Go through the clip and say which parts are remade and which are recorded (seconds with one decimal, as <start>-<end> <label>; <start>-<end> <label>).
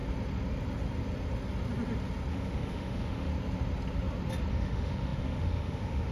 0.0-2.3 recorded; 2.3-3.3 remade; 3.3-4.5 recorded; 4.5-6.1 remade